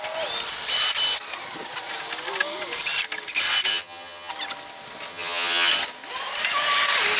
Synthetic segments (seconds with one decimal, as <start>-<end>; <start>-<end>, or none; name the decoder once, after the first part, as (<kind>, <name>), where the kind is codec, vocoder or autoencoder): 3.7-4.3 (vocoder, HiFi-GAN); 5.1-5.7